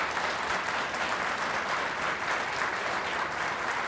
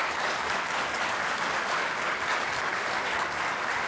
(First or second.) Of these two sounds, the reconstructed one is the second